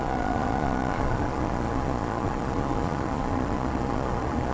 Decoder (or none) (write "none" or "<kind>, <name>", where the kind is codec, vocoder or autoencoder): vocoder, Vocos